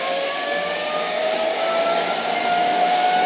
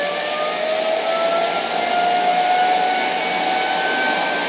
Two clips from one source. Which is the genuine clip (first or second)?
second